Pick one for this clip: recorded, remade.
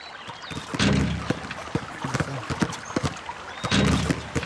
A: recorded